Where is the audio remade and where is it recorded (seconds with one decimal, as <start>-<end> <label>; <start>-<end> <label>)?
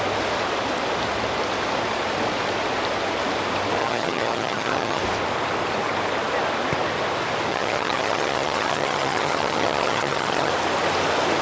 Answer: 0.0-3.8 recorded; 3.8-5.0 remade; 5.0-7.5 recorded; 7.5-10.5 remade; 10.5-11.4 recorded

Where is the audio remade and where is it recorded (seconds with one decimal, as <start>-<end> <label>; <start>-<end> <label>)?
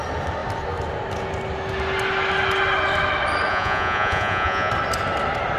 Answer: 0.0-3.5 recorded; 3.5-4.7 remade; 4.7-5.6 recorded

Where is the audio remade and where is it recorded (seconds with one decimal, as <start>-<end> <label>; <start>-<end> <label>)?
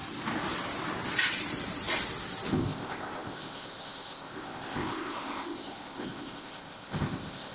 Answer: 0.0-2.5 recorded; 2.5-7.5 remade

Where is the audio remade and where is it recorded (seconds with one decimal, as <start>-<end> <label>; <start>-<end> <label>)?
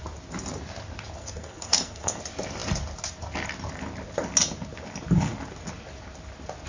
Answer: 0.0-1.2 recorded; 1.2-2.2 remade; 2.2-6.7 recorded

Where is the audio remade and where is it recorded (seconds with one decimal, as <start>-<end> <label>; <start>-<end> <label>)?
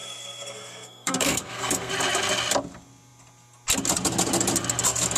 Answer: 0.0-1.9 remade; 1.9-5.2 recorded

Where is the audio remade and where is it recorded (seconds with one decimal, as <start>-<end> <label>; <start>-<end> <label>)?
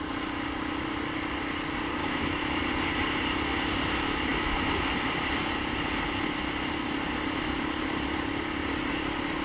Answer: 0.0-2.0 recorded; 2.0-2.6 remade; 2.6-9.4 recorded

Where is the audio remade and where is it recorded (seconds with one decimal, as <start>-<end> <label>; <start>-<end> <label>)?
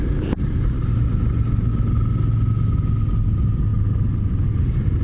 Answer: 0.0-5.0 recorded